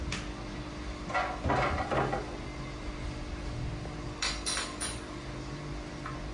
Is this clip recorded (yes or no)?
yes